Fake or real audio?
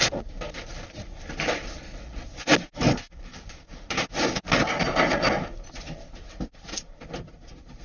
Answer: real